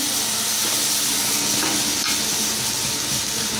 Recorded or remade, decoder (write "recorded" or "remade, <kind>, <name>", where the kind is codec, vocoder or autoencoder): recorded